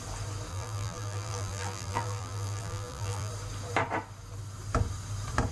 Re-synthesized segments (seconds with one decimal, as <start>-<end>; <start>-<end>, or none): 0.5-3.3